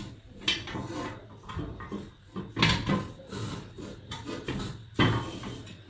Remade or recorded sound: recorded